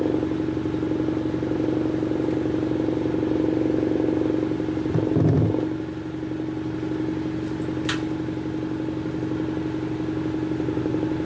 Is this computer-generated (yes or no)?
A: no